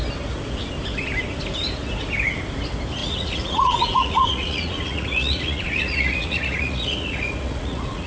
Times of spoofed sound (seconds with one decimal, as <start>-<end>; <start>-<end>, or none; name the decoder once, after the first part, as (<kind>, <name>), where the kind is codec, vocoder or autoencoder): 3.0-8.1 (vocoder, Vocos)